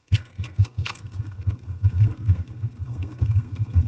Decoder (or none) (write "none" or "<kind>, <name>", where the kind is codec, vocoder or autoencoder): codec, SNAC